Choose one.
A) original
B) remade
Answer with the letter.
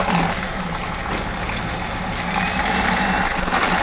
B